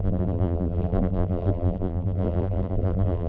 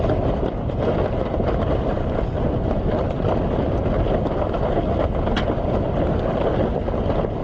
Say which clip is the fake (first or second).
first